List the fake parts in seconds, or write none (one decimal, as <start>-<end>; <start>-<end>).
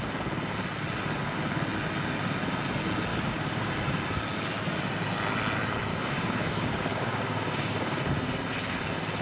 3.1-3.7; 5.9-8.0